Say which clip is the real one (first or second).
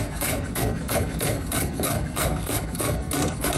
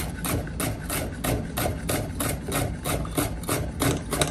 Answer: second